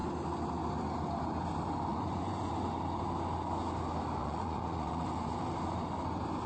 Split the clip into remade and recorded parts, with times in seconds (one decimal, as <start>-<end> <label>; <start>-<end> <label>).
0.0-1.9 recorded; 1.9-2.5 remade; 2.5-4.2 recorded; 4.2-5.4 remade; 5.4-6.5 recorded